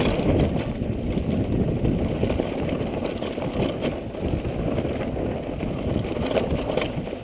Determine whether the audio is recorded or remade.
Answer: recorded